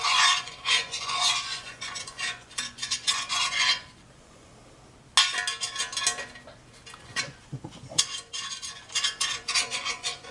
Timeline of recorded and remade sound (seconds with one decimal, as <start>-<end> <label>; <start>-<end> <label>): 0.0-4.5 remade; 4.5-7.0 recorded; 7.0-10.3 remade